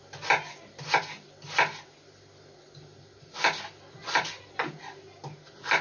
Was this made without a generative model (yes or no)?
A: yes